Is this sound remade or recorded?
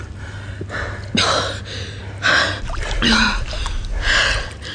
recorded